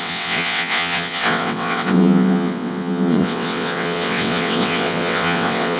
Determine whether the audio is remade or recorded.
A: remade